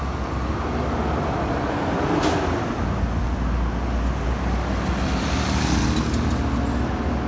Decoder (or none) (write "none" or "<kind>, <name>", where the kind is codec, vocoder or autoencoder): none